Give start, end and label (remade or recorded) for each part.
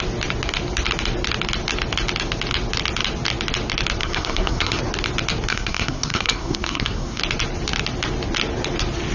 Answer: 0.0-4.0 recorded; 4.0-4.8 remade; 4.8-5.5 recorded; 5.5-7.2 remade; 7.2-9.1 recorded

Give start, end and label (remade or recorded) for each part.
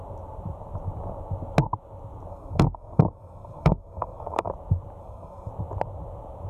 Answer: 0.0-2.3 recorded; 2.3-4.5 remade; 4.5-5.0 recorded; 5.0-5.5 remade; 5.5-6.5 recorded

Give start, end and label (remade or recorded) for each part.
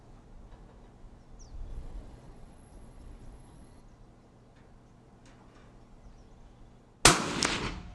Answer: 0.0-1.7 recorded; 1.7-3.8 remade; 3.8-7.9 recorded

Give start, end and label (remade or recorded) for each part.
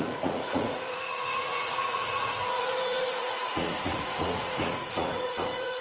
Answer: 0.0-5.8 remade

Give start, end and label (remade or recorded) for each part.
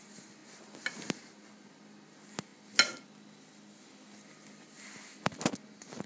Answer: 0.0-6.1 recorded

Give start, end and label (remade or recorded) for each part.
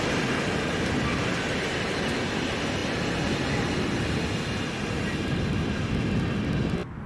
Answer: 0.0-7.1 recorded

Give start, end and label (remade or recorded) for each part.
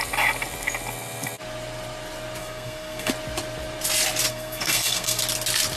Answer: 0.0-2.4 recorded; 2.4-3.1 remade; 3.1-4.3 recorded; 4.3-5.2 remade; 5.2-5.8 recorded